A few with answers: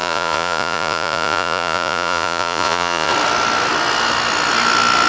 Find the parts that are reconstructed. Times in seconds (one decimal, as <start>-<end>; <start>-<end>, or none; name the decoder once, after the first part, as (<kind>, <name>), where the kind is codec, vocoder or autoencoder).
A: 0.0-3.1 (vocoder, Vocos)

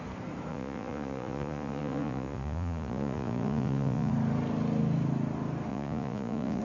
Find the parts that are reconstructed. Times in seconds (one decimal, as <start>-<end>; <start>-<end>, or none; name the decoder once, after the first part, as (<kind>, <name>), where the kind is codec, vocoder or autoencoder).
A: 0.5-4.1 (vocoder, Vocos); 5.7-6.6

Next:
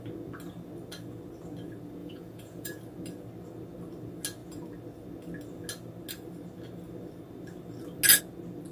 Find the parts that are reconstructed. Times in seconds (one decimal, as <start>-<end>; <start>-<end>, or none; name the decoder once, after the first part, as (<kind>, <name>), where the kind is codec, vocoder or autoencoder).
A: 2.0-2.8 (vocoder, Vocos)

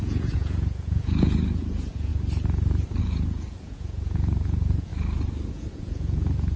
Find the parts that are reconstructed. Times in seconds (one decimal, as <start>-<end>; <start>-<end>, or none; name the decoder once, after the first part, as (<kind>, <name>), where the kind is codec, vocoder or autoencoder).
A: 0.0-2.1 (vocoder, Vocos); 3.0-4.9; 5.5-6.6

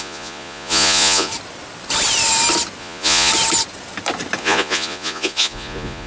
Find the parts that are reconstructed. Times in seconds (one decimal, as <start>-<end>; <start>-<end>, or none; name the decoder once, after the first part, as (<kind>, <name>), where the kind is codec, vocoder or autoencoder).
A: 0.0-1.3 (vocoder, Vocos); 2.8-3.3; 4.4-6.1